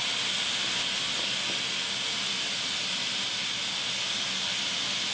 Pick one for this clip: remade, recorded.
recorded